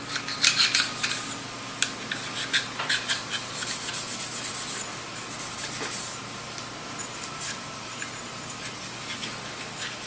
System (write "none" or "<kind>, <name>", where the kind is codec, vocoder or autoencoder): none